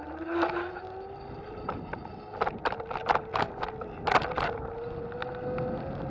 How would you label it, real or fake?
real